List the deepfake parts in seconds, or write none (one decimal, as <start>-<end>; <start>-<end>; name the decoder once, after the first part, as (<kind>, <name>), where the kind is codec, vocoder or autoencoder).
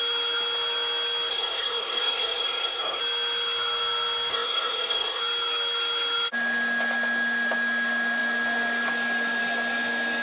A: 1.3-3.0 (codec, SNAC); 4.3-5.2